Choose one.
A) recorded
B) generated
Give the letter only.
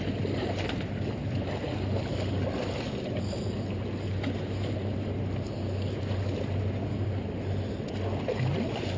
A